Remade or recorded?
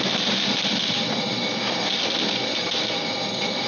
recorded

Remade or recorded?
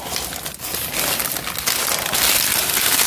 recorded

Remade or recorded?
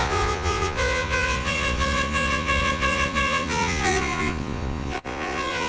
remade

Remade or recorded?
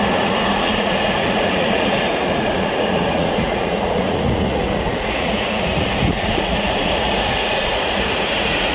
remade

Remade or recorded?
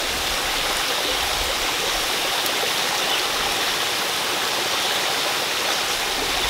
recorded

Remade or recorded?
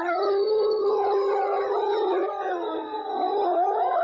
remade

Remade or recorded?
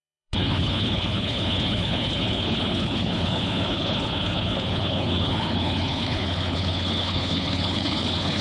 remade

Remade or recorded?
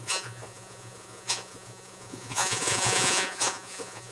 remade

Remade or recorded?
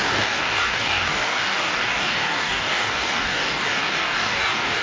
remade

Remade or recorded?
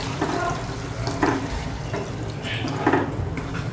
remade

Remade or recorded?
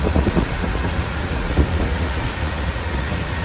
remade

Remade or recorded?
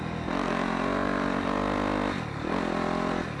recorded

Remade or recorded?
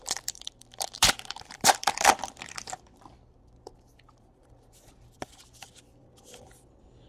remade